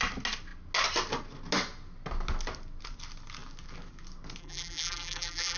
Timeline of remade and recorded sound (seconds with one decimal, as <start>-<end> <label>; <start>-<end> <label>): 0.0-4.4 recorded; 4.4-5.6 remade